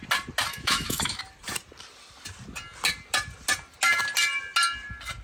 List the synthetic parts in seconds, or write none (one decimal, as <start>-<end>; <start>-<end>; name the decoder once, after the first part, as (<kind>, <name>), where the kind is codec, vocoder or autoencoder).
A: 0.5-1.2 (autoencoder, DAC-VAE)